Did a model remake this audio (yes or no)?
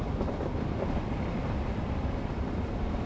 no